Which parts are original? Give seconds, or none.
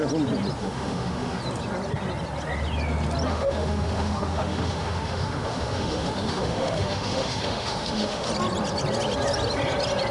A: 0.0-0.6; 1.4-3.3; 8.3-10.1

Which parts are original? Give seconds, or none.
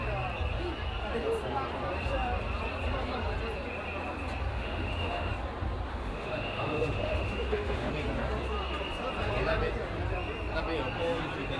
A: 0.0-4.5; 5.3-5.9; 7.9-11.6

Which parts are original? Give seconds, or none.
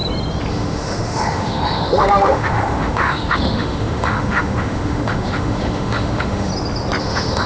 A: 0.0-0.5; 6.5-7.0